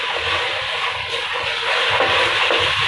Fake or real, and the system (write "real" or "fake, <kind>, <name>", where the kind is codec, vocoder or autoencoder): real